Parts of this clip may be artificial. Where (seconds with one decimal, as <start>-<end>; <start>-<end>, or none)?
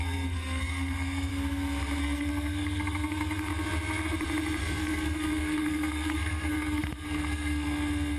0.0-1.3; 2.0-3.5; 4.6-8.2